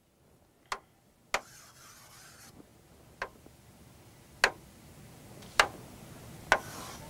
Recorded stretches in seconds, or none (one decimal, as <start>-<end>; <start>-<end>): 0.0-7.1

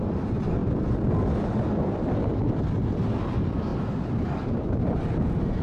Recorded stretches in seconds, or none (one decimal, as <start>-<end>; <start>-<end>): 0.0-5.6

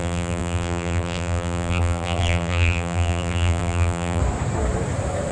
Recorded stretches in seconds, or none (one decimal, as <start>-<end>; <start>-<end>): 4.2-5.3

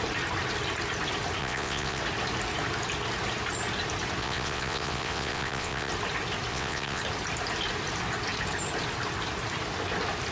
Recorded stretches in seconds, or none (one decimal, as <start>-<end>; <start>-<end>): 0.0-1.4; 2.0-4.2; 5.9-6.5; 7.0-10.3